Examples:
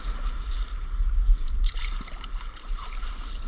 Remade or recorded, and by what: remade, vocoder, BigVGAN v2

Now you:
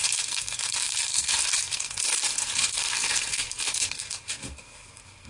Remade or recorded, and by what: remade, codec, SNAC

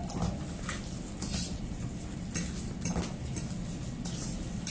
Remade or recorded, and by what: recorded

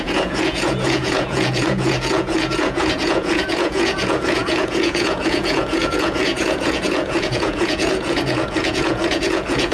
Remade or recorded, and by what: remade, vocoder, Vocos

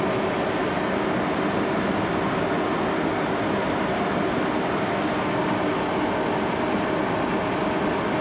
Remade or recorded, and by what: recorded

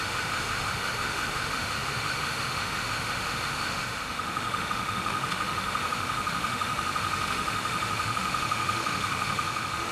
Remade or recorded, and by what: remade, autoencoder, DAC-VAE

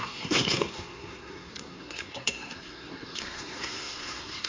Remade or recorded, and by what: remade, codec, SNAC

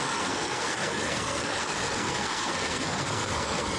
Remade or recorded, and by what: remade, codec, SNAC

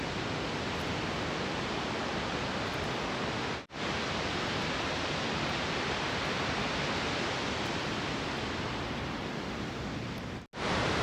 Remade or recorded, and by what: recorded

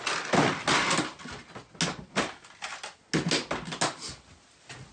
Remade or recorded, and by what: recorded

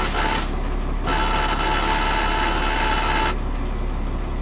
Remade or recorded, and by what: recorded